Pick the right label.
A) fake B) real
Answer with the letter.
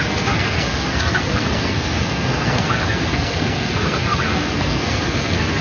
A